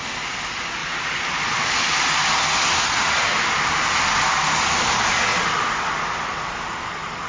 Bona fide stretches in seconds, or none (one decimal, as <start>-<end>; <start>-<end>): 0.0-7.3

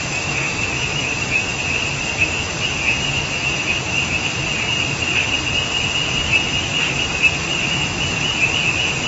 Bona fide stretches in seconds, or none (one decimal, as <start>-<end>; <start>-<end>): 1.6-2.3; 4.5-9.1

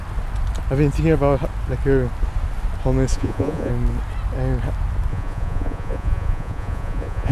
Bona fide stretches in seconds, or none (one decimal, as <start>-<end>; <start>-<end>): 0.0-3.1; 3.7-5.1

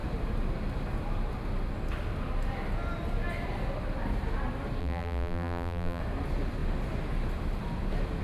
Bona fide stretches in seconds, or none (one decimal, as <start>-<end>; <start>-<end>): 0.0-4.8; 6.0-8.2

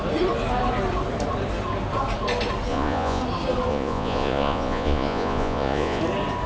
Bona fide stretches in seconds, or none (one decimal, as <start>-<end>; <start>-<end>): 0.0-2.7; 3.2-3.7; 6.0-6.5